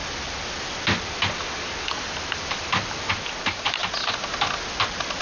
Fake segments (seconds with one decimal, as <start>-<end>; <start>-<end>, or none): none